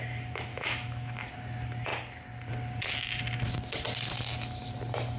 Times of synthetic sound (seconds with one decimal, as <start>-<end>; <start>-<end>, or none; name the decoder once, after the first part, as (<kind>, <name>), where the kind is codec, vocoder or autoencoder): 0.5-1.3 (autoencoder, DAC-VAE)